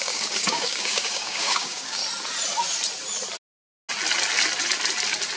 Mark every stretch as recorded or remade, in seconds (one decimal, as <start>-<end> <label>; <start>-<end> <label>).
0.0-2.0 remade; 2.0-5.4 recorded